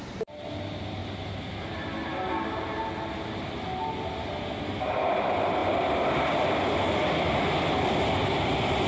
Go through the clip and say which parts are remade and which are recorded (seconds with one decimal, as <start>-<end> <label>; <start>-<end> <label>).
0.0-8.9 recorded